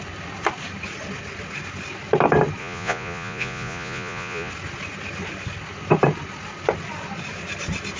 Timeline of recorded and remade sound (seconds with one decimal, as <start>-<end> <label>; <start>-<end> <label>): 0.0-2.6 recorded; 2.6-4.5 remade; 4.5-8.0 recorded